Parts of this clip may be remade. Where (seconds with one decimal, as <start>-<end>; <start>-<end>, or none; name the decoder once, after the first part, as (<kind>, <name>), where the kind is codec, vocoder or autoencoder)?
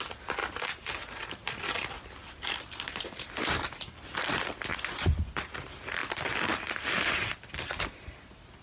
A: 4.7-5.3 (vocoder, Vocos)